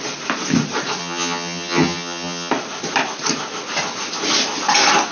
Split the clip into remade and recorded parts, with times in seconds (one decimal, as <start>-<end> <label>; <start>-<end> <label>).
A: 0.0-1.0 recorded; 1.0-2.5 remade; 2.5-5.1 recorded